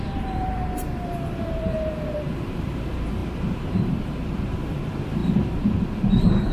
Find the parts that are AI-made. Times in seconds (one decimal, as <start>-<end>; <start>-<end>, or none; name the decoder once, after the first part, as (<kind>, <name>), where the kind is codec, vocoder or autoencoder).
0.0-6.5 (vocoder, BigVGAN v2)